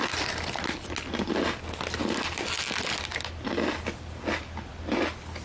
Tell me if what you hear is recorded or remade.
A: recorded